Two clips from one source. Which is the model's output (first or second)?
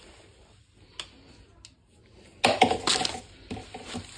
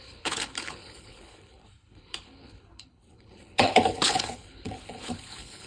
second